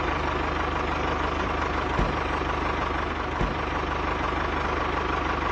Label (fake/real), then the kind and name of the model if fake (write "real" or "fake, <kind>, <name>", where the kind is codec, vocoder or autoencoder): real